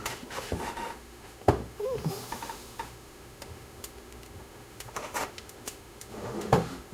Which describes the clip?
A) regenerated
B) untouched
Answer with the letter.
A